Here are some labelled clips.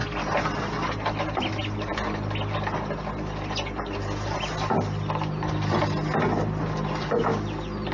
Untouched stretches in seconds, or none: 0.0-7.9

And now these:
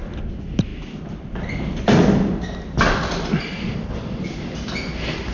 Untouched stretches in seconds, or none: 0.0-5.3